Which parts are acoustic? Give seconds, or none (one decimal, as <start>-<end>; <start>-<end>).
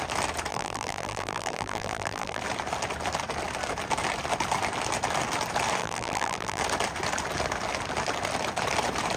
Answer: 0.0-0.5; 2.4-5.8; 6.6-9.2